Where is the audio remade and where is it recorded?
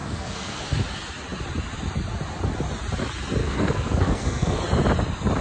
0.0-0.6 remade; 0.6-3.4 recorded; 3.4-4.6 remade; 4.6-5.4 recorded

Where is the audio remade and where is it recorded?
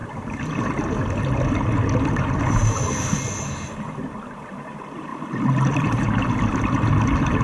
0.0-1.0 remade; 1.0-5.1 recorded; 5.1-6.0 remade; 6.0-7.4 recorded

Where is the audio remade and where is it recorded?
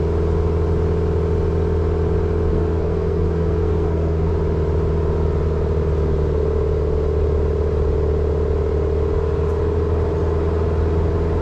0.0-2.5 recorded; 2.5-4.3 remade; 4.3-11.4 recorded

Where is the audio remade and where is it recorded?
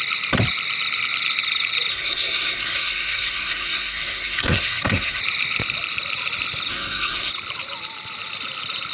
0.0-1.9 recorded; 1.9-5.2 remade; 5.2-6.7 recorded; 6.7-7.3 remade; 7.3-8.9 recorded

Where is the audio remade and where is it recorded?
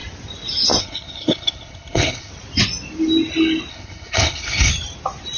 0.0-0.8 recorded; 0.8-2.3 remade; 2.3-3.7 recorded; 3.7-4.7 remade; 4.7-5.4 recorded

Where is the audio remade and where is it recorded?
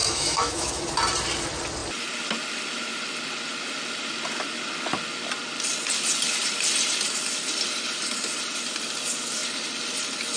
0.0-0.8 remade; 0.8-10.4 recorded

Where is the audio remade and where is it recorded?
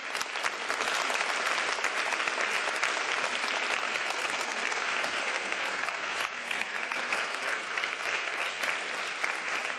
0.0-3.9 recorded; 3.9-8.6 remade; 8.6-9.8 recorded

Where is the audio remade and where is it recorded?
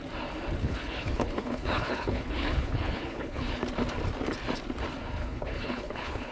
0.0-0.6 recorded; 0.6-3.5 remade; 3.5-5.2 recorded; 5.2-6.3 remade